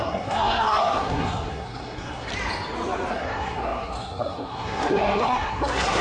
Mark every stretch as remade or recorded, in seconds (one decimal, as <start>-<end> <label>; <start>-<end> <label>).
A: 0.0-2.3 remade; 2.3-3.1 recorded; 3.1-6.0 remade